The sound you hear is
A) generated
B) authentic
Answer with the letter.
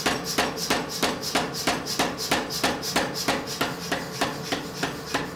B